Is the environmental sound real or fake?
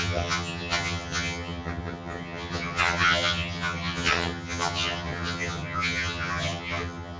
fake